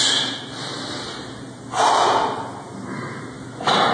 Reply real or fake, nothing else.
real